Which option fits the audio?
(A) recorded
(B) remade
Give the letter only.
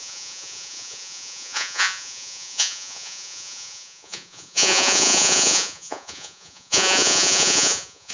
B